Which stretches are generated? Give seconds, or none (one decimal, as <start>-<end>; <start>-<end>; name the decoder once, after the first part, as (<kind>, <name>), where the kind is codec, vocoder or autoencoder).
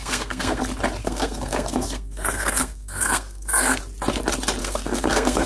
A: 0.0-0.6 (codec, SNAC); 1.0-3.8; 4.6-5.5